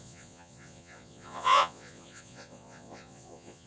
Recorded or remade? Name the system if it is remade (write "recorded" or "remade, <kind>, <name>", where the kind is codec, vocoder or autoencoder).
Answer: remade, vocoder, Vocos